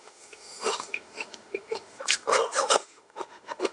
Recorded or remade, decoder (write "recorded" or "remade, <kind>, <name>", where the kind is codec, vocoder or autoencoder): remade, autoencoder, DAC-VAE